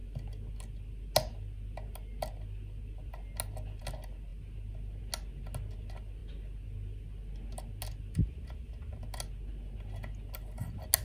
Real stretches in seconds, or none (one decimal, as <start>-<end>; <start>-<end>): 0.0-11.0